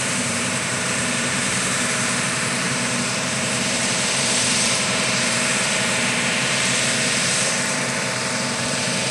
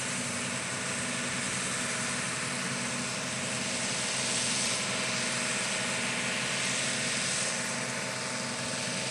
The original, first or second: second